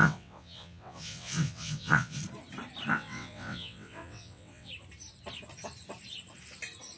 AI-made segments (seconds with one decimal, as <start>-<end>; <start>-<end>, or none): 0.0-2.2; 2.9-4.7